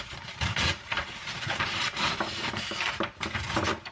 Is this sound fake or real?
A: fake